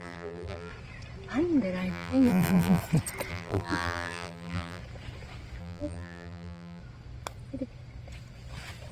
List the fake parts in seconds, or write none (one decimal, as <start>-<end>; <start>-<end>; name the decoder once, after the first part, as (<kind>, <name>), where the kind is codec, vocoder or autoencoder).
0.0-0.7 (vocoder, BigVGAN v2); 1.9-2.8; 3.3-4.8; 5.6-6.8